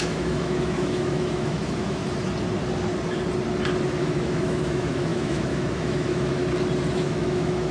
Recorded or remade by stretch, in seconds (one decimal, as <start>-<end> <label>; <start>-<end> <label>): 0.0-2.0 remade; 2.0-4.0 recorded; 4.0-6.4 remade; 6.4-6.9 recorded; 6.9-7.7 remade